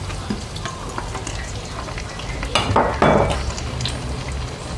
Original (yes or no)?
yes